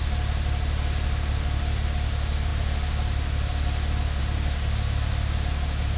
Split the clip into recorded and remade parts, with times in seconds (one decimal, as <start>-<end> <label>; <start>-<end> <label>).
0.0-6.0 recorded